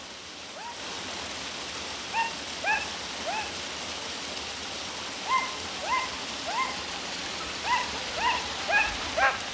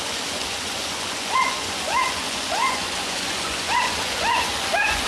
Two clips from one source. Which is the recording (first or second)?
first